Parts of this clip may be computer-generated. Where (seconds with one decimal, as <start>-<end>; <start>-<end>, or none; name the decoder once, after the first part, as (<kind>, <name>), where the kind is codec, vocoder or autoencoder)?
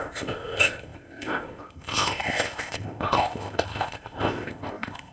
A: 0.0-5.1 (codec, ZipCodec)